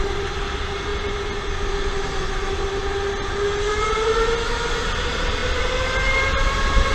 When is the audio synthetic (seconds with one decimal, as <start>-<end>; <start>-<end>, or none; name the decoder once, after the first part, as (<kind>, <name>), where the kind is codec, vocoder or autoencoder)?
none